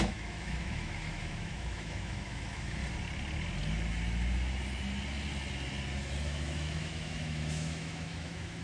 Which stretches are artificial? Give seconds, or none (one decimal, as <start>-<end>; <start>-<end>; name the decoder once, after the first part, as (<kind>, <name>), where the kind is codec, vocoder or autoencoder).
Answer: 0.0-2.8 (autoencoder, DAC-VAE); 6.2-8.6